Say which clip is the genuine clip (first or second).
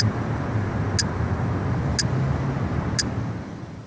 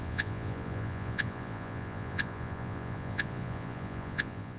first